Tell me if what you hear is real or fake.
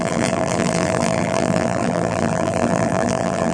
fake